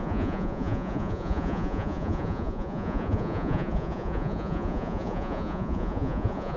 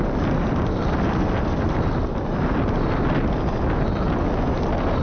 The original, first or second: second